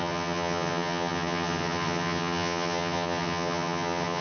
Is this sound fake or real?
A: fake